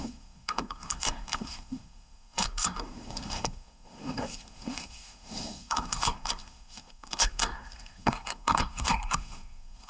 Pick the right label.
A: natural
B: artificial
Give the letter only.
B